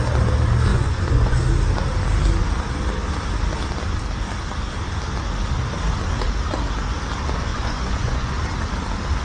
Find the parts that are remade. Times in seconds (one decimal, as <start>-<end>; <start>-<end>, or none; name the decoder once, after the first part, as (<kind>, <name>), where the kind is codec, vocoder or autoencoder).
0.7-1.4 (vocoder, Vocos); 7.5-8.3